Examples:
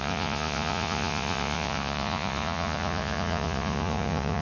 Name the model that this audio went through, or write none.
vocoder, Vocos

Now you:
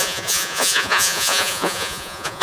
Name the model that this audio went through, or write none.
vocoder, Vocos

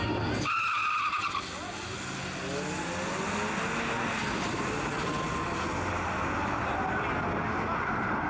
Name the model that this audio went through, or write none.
none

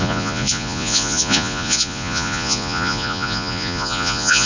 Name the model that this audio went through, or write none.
vocoder, Vocos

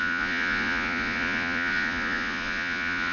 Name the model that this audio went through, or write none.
vocoder, Vocos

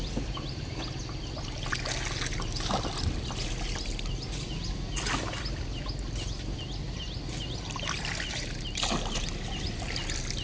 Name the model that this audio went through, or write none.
none